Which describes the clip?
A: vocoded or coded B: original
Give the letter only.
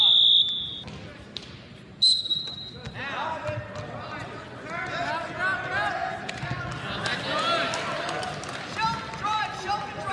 B